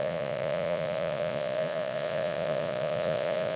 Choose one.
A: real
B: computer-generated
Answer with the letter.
B